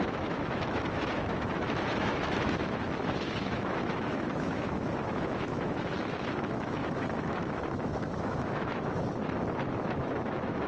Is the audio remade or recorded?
remade